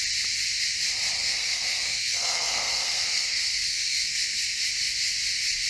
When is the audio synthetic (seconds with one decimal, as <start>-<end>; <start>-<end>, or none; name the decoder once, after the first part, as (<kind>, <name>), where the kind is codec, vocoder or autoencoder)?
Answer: 1.2-4.6 (codec, SNAC)